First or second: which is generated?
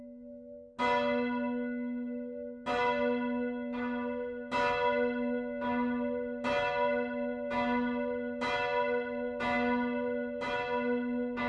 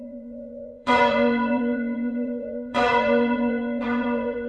second